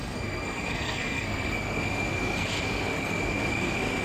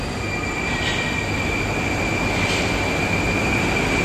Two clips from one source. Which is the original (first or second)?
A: second